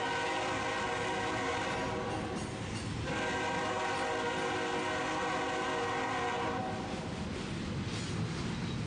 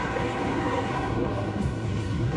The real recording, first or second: first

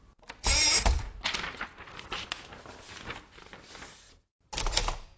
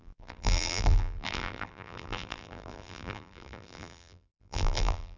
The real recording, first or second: first